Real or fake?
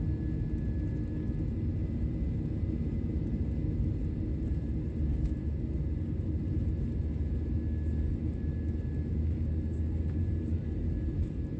real